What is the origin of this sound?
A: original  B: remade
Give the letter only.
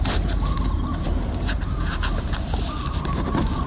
B